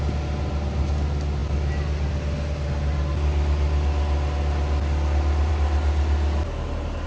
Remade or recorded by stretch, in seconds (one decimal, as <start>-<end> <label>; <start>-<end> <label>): 0.0-7.1 recorded